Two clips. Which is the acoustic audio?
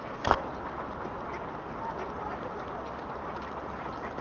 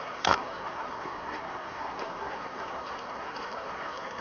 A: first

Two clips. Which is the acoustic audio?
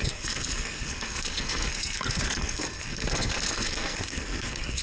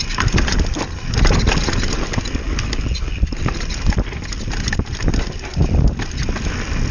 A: second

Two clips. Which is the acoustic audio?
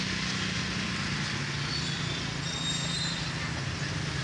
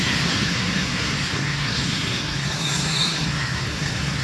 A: first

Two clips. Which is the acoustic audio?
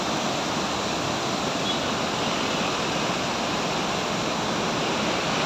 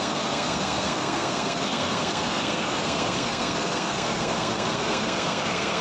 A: first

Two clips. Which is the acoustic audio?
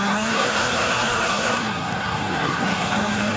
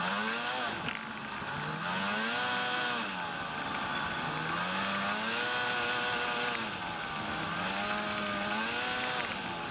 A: second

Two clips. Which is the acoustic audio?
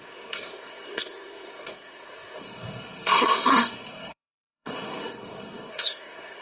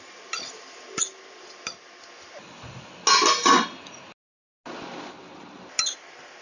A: second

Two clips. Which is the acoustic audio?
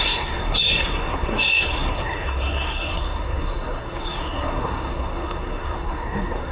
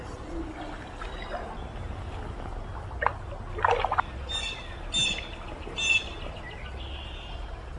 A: second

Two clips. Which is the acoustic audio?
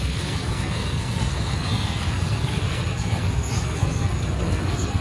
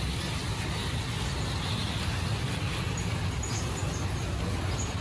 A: second